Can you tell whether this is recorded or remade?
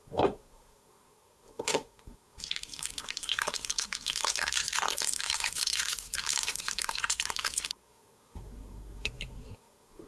remade